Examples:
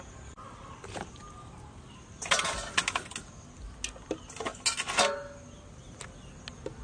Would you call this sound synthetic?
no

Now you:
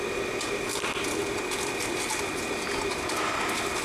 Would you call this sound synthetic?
yes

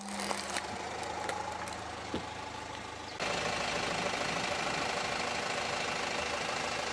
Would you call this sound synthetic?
no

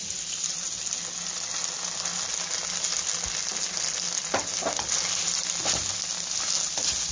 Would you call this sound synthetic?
no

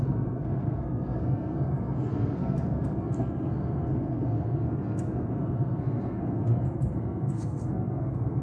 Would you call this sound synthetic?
yes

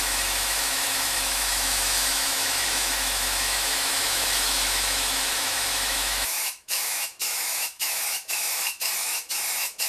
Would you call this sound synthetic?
yes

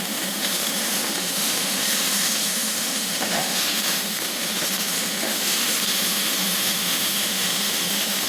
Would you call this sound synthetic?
yes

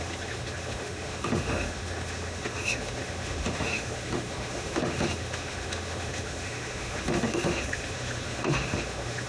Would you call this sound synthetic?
yes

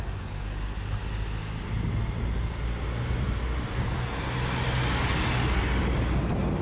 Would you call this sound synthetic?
no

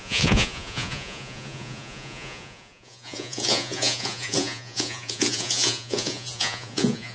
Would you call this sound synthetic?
yes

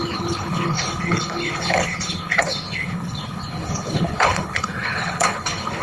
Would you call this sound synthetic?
yes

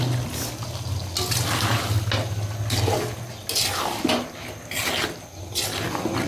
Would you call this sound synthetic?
no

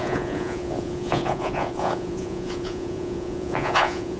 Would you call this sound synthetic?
yes